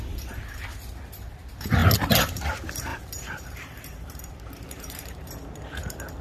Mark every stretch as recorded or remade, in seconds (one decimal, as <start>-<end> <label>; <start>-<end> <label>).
0.0-2.9 recorded; 2.9-5.3 remade; 5.3-6.2 recorded